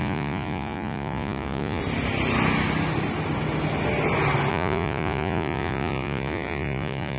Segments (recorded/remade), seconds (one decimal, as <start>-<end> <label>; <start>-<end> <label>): 0.0-1.8 remade; 1.8-4.5 recorded; 4.5-7.2 remade